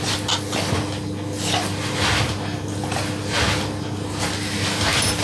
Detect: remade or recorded recorded